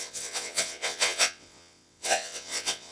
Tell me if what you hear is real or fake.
fake